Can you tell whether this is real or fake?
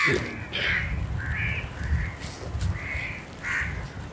real